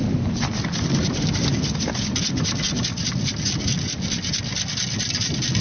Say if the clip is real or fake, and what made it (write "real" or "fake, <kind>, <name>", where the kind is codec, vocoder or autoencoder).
real